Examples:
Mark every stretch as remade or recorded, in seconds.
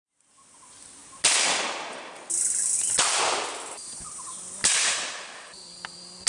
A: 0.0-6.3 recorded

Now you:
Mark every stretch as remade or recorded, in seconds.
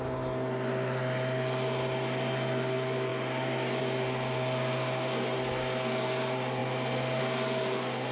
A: 0.0-8.1 recorded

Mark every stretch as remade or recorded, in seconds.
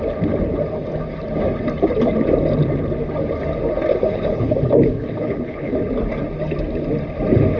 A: 0.0-3.9 recorded; 3.9-5.8 remade; 5.8-7.6 recorded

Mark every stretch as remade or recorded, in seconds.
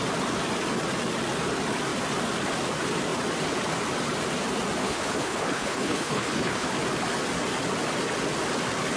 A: 0.0-4.8 recorded; 4.8-6.7 remade; 6.7-9.0 recorded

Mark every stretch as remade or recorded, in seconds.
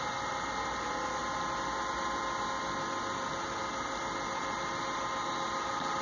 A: 0.0-6.0 recorded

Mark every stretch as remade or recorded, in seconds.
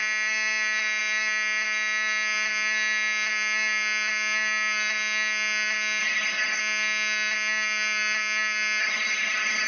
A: 0.0-6.0 recorded; 6.0-6.6 remade; 6.6-8.8 recorded; 8.8-9.7 remade